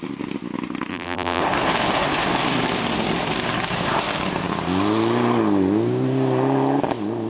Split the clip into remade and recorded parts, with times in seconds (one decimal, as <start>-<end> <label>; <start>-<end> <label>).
0.0-0.9 recorded; 0.9-1.4 remade; 1.4-7.3 recorded